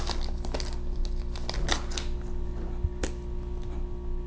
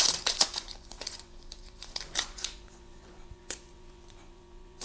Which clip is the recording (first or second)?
first